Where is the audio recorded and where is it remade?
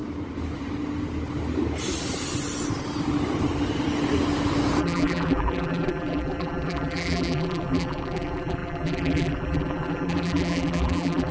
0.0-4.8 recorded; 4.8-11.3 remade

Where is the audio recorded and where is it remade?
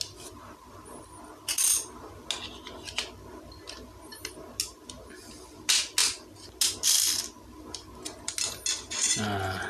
0.0-9.7 recorded